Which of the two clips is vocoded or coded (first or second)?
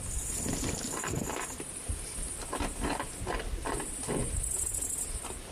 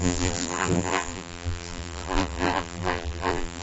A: second